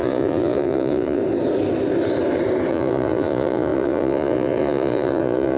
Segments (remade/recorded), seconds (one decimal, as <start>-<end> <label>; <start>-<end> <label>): 0.0-1.2 remade; 1.2-2.7 recorded; 2.7-5.6 remade